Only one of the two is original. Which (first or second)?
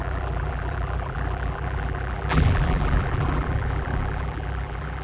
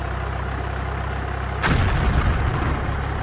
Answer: second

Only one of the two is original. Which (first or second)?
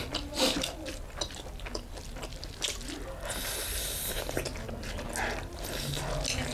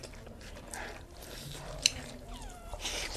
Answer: first